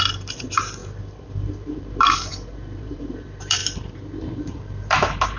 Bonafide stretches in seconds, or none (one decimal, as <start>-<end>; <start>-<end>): 3.6-4.4